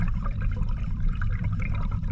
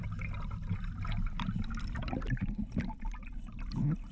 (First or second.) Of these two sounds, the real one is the second